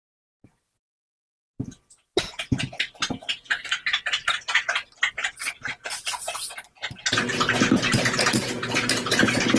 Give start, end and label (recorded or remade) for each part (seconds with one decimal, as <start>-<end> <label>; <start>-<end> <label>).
0.0-9.6 recorded